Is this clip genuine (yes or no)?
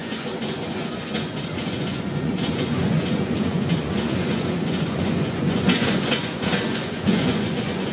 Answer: no